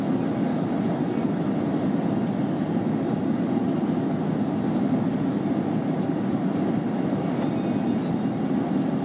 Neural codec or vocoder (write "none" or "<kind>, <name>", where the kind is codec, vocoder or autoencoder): none